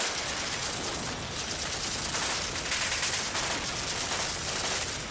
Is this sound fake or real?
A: real